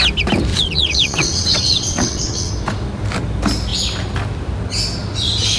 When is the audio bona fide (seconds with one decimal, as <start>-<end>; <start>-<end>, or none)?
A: 0.0-0.5; 2.5-5.6